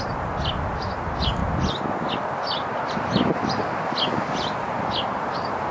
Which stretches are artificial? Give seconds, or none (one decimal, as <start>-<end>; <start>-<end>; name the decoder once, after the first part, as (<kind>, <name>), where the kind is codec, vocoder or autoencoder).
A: none